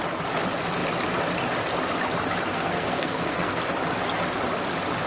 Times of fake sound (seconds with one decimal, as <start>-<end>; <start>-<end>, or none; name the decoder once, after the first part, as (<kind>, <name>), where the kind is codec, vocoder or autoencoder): 2.5-3.6 (codec, SNAC)